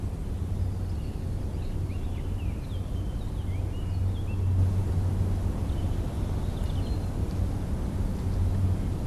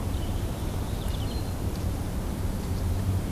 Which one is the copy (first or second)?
second